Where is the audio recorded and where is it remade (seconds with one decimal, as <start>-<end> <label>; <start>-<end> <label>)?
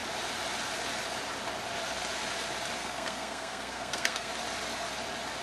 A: 0.0-2.8 recorded; 2.8-4.3 remade; 4.3-5.4 recorded